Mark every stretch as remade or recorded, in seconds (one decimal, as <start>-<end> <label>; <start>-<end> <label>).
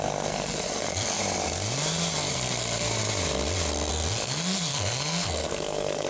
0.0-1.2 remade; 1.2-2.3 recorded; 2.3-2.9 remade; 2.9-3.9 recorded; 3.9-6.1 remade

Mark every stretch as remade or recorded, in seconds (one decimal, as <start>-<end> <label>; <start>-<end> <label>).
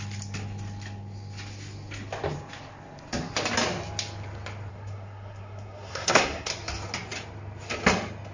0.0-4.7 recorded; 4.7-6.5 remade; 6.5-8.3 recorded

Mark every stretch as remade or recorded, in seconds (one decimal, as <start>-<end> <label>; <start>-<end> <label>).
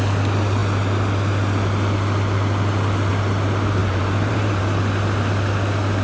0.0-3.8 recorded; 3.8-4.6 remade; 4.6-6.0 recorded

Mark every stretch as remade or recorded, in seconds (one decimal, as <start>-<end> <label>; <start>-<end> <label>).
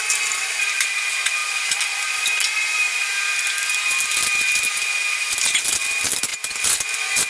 0.0-7.3 recorded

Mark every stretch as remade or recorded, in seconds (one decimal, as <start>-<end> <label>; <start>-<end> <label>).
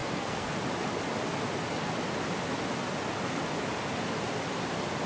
0.0-0.5 remade; 0.5-5.1 recorded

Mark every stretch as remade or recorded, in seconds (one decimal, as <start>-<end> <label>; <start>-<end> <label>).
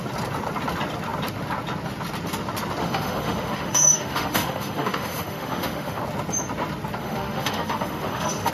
0.0-2.8 recorded; 2.8-6.0 remade; 6.0-7.0 recorded; 7.0-8.5 remade